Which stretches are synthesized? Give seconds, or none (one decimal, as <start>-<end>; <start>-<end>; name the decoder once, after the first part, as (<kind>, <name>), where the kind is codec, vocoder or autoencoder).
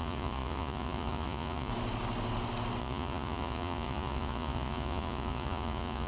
0.0-1.7 (vocoder, Vocos); 2.8-6.1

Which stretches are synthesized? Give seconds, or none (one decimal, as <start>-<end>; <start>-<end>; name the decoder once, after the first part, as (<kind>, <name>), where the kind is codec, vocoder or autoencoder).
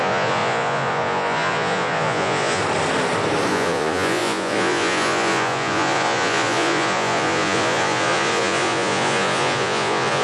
0.0-2.6 (vocoder, Vocos); 3.5-10.2